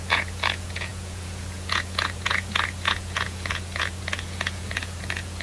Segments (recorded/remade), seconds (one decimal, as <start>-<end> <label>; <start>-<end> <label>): 0.0-5.4 remade